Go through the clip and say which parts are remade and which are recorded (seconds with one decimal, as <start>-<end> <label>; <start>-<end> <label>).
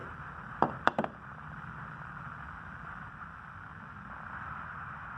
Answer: 0.0-3.1 remade; 3.1-5.2 recorded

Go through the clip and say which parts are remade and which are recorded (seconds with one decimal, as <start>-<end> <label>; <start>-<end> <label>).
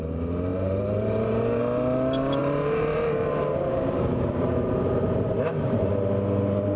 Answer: 0.0-0.5 recorded; 0.5-1.6 remade; 1.6-2.4 recorded; 2.4-5.9 remade; 5.9-6.8 recorded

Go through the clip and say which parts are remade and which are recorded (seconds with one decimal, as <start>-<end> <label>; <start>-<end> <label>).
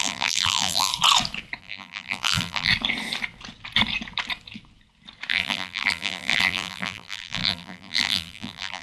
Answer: 0.0-0.9 remade; 0.9-1.6 recorded; 1.6-2.7 remade; 2.7-5.3 recorded; 5.3-8.8 remade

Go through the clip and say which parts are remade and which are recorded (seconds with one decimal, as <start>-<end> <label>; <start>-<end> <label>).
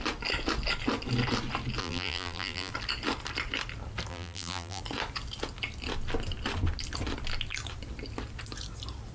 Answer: 0.0-1.8 recorded; 1.8-2.7 remade; 2.7-4.1 recorded; 4.1-4.8 remade; 4.8-9.1 recorded